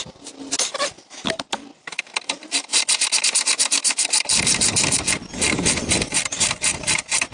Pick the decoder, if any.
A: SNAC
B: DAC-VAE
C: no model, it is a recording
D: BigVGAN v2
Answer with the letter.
D